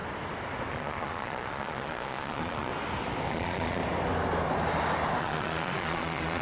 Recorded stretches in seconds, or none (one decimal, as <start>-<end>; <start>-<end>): 0.0-0.7; 2.7-3.3; 3.8-5.2